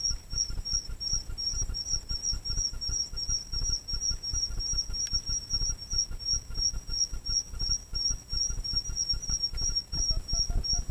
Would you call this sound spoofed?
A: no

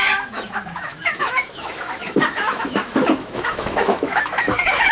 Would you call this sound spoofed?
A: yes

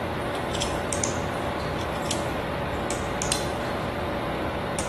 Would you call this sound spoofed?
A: no